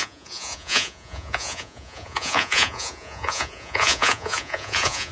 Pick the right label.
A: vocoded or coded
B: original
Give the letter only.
A